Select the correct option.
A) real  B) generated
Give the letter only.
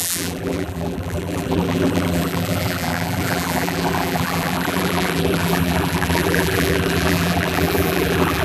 B